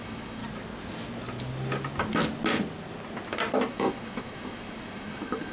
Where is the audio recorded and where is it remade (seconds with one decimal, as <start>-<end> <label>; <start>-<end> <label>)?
0.0-0.4 remade; 0.4-3.7 recorded; 3.7-5.5 remade